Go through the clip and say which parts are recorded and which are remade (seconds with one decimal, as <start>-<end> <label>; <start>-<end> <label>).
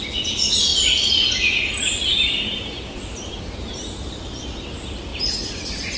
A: 0.0-2.1 recorded; 2.1-4.2 remade; 4.2-5.1 recorded; 5.1-6.0 remade